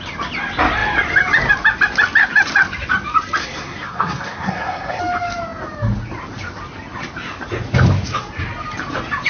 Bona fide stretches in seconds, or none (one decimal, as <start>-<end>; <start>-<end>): 0.0-3.4; 5.0-9.3

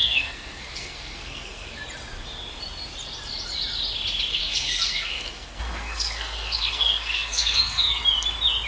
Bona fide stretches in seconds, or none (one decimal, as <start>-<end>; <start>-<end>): 1.8-4.3; 8.0-8.7

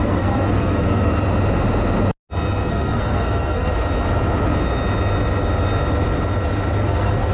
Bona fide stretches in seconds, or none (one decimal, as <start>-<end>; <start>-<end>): 1.1-2.7; 3.7-6.8

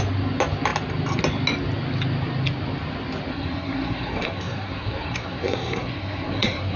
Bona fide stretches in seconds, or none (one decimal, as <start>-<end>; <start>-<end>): 0.0-3.3

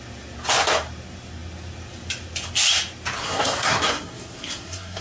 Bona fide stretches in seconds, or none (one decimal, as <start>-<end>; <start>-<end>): 0.0-3.2

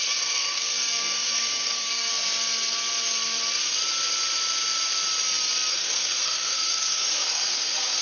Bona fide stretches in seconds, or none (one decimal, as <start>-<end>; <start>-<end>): 2.1-5.7

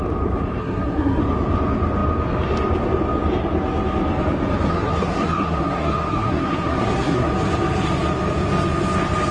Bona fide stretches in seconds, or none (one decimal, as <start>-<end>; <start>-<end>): 0.0-0.6; 1.2-4.7; 7.3-9.3